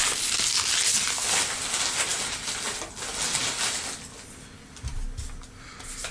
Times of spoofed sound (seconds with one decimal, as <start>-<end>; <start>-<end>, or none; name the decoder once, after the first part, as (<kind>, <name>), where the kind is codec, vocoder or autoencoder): none